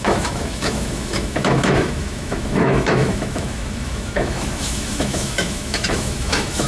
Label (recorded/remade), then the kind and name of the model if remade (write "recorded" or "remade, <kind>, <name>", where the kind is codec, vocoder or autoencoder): remade, autoencoder, DAC-VAE